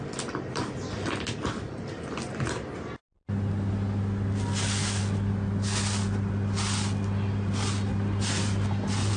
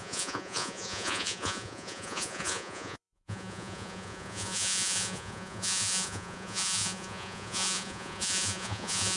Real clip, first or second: first